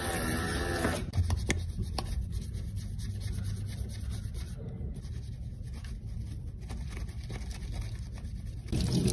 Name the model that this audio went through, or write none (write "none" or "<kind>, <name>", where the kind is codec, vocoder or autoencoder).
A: none